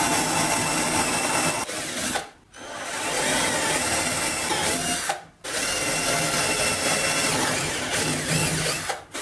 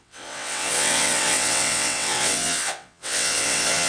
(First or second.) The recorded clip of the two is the first